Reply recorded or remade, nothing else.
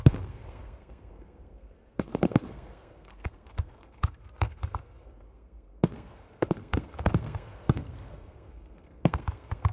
remade